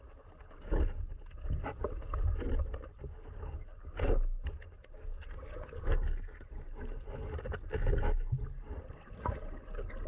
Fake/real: real